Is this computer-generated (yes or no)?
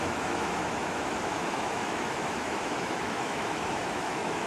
yes